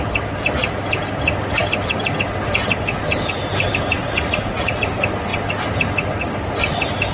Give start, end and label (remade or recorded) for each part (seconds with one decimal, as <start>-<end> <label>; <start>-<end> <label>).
0.0-4.0 recorded; 4.0-4.7 remade; 4.7-7.1 recorded